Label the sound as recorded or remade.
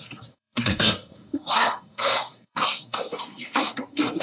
remade